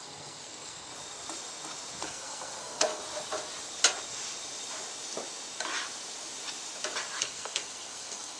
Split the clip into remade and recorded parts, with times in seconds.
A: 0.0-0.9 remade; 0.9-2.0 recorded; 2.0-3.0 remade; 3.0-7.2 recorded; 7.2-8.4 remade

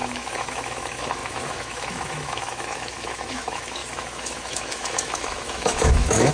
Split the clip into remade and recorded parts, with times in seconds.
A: 0.0-6.3 remade

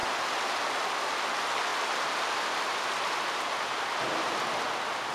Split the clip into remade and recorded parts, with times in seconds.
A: 0.0-5.1 recorded

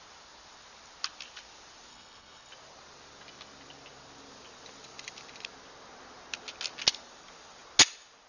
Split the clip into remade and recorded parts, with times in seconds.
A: 0.0-1.9 recorded; 1.9-2.5 remade; 2.5-8.3 recorded

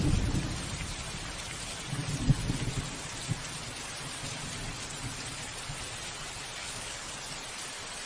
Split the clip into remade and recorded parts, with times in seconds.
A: 0.0-6.6 recorded; 6.6-7.1 remade; 7.1-8.1 recorded

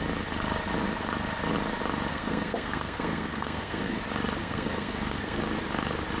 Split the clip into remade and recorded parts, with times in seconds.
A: 0.0-2.1 recorded; 2.1-4.0 remade; 4.0-4.4 recorded; 4.4-5.4 remade; 5.4-6.2 recorded

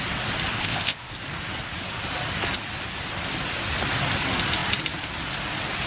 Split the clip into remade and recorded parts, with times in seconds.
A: 0.0-0.5 recorded; 0.5-1.2 remade; 1.2-5.9 recorded

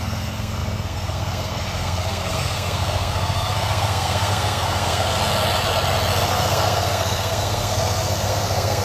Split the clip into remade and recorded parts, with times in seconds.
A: 0.0-5.1 remade; 5.1-6.3 recorded; 6.3-8.8 remade